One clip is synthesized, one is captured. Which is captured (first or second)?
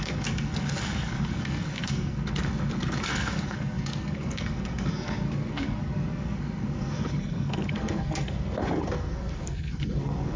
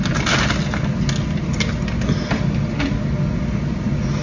second